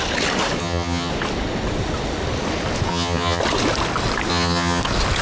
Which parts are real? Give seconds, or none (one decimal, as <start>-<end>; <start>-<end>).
0.0-0.6; 1.1-2.9; 3.4-4.3; 4.8-5.2